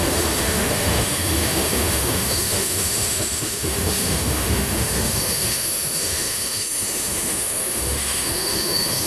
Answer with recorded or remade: remade